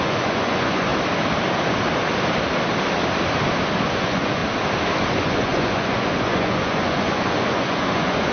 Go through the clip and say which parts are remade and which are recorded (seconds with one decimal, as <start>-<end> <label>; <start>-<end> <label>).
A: 0.0-0.9 remade; 0.9-3.8 recorded; 3.8-4.4 remade; 4.4-5.2 recorded; 5.2-8.3 remade